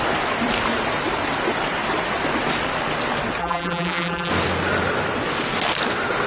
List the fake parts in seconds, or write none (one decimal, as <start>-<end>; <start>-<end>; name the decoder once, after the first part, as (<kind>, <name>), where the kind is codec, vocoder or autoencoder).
3.4-4.3 (vocoder, BigVGAN v2)

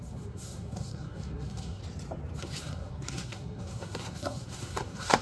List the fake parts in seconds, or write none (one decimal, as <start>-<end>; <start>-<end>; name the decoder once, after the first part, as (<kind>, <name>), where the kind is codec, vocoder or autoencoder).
0.0-1.8 (codec, SNAC); 2.4-5.2

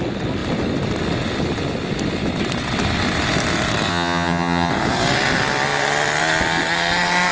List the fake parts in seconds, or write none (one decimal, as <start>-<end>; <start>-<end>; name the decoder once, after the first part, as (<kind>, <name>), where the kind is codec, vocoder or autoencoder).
3.9-4.7 (vocoder, HiFi-GAN)

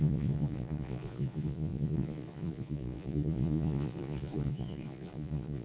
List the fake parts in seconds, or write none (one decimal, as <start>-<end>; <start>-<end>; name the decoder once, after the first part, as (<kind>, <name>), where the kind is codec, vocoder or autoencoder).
0.0-5.6 (vocoder, Vocos)

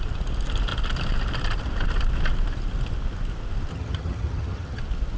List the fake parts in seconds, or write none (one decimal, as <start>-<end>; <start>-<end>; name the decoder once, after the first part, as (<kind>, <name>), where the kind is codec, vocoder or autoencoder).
3.7-4.8 (vocoder, HiFi-GAN)

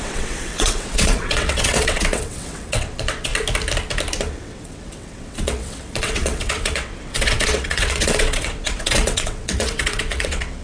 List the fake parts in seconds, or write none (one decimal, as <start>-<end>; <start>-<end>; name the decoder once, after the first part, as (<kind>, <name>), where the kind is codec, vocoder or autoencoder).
0.0-3.3 (vocoder, WaveNeXt); 4.4-10.6

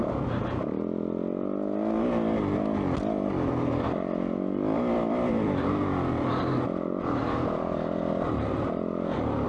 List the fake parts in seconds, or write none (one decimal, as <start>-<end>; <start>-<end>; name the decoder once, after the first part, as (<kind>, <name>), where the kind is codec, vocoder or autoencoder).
3.8-9.5 (vocoder, BigVGAN v2)